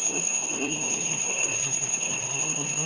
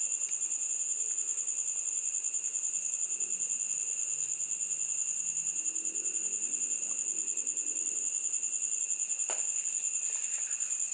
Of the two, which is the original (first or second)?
second